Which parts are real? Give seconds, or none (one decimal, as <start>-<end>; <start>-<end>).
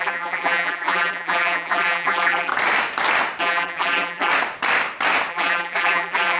2.5-3.4; 4.3-5.3